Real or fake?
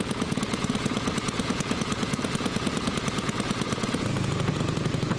fake